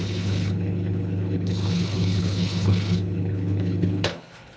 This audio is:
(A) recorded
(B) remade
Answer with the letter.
B